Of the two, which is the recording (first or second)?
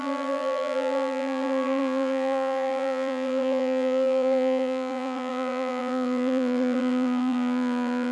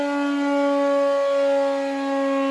second